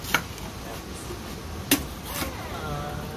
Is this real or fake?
real